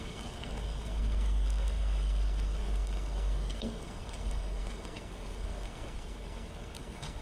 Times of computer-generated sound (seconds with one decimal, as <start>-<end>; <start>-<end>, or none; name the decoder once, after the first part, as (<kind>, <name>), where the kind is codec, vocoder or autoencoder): 0.0-7.2 (codec, SNAC)